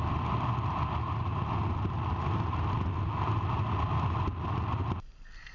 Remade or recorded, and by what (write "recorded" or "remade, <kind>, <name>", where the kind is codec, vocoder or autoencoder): recorded